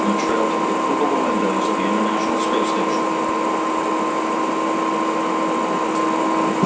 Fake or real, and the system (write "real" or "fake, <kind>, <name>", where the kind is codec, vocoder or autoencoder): real